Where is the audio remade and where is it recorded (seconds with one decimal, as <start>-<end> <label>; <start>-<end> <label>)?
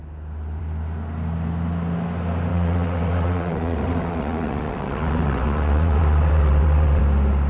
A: 0.0-2.5 recorded; 2.5-7.0 remade; 7.0-7.5 recorded